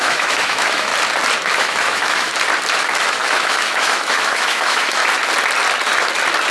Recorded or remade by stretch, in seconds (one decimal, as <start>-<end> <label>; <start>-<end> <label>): 0.0-0.9 remade; 0.9-1.6 recorded; 1.6-2.3 remade; 2.3-2.8 recorded; 2.8-5.0 remade; 5.0-6.5 recorded

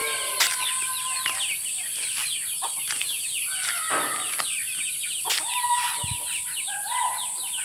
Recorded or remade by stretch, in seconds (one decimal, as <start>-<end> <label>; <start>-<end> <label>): 0.0-6.5 recorded; 6.5-7.6 remade

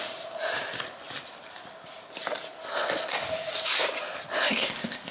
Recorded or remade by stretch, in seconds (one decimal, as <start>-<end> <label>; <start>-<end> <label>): 0.0-4.5 recorded; 4.5-5.1 remade

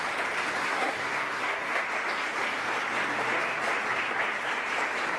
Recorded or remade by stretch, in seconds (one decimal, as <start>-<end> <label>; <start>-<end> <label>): 0.0-0.6 recorded; 0.6-1.8 remade; 1.8-5.2 recorded

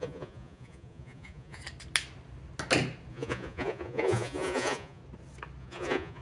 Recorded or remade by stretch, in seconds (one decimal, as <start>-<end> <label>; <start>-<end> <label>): 0.0-1.6 remade; 1.6-3.1 recorded; 3.1-5.0 remade; 5.0-5.6 recorded; 5.6-6.2 remade